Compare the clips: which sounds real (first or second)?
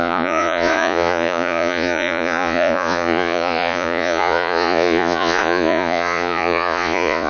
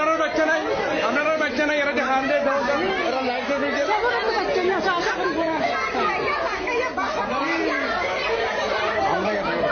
second